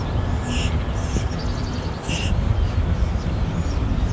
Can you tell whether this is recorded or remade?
recorded